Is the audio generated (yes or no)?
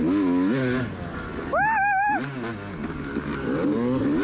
no